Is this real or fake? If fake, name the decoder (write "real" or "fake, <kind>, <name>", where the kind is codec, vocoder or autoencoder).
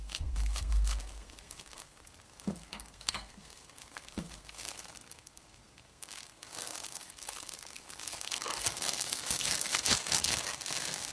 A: fake, codec, SNAC